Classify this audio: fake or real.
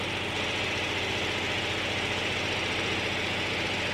real